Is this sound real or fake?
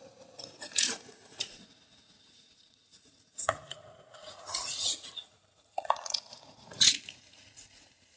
fake